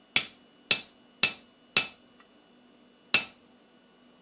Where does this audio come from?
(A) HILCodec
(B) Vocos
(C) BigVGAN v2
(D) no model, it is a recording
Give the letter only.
D